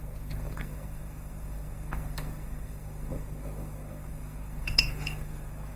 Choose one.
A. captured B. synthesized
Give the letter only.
B